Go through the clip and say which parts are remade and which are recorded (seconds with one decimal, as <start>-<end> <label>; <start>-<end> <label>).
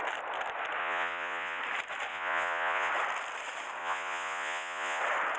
0.0-0.8 recorded; 0.8-1.6 remade; 1.6-2.1 recorded; 2.1-2.9 remade; 2.9-3.8 recorded; 3.8-5.0 remade; 5.0-5.4 recorded